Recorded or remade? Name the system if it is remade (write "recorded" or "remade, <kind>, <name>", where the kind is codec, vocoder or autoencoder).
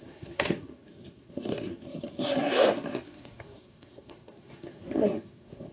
remade, codec, SNAC